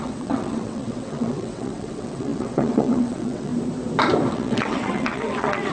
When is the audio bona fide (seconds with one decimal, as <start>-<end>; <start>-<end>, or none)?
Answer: 3.5-4.3